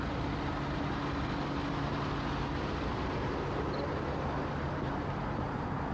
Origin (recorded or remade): recorded